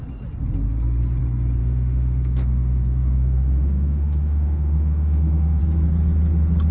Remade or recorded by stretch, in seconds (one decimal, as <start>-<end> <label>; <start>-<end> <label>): 0.0-1.6 recorded; 1.6-5.6 remade; 5.6-6.7 recorded